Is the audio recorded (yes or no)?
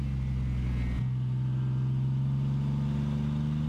yes